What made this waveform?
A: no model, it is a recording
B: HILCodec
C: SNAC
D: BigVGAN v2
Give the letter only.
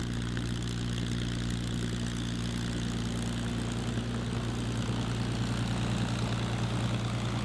A